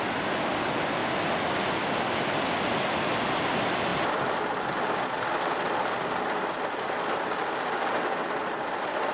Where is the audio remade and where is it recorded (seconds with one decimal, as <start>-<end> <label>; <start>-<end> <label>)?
0.0-9.1 recorded